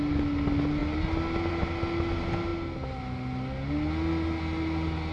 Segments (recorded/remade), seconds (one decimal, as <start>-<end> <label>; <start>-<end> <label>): 0.0-5.1 recorded

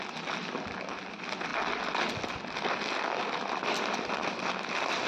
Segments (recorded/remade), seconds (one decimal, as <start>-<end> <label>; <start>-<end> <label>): 0.0-5.1 recorded